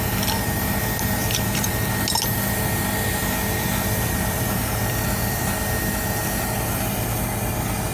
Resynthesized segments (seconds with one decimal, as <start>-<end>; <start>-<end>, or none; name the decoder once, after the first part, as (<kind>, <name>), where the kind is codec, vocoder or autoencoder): 1.2-1.9 (vocoder, BigVGAN v2); 3.2-7.5